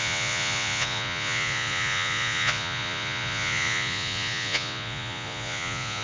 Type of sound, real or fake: fake